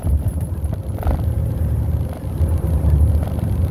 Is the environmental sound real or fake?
real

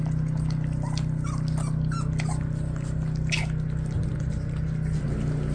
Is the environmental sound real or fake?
real